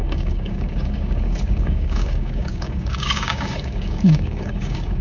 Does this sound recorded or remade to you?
remade